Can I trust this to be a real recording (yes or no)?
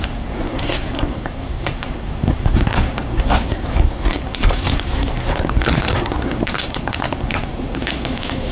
no